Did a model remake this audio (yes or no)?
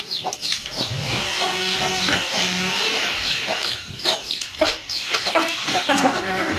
yes